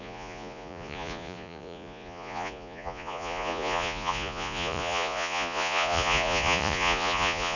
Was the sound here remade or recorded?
remade